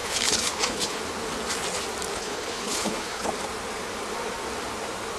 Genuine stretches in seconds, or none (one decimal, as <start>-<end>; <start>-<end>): 1.0-2.1; 3.3-5.2

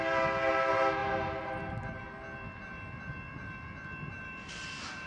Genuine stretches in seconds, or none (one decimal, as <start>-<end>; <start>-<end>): 0.0-5.1

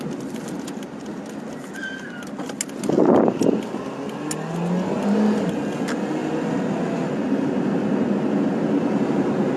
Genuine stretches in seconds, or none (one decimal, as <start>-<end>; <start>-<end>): 0.0-9.6

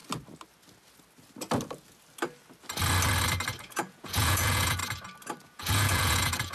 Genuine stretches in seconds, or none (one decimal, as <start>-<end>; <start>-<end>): 0.0-3.6; 4.8-5.4

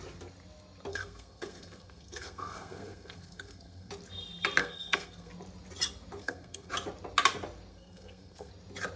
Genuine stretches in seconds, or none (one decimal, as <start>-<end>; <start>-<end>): 0.0-0.9; 3.9-4.6; 5.3-6.2; 6.7-7.7; 8.5-9.0